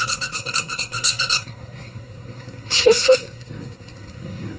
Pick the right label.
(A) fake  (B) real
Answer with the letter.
A